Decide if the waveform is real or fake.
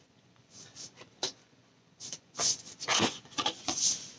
fake